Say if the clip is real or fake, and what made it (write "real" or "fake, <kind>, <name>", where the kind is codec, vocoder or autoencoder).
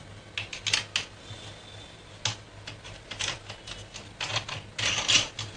real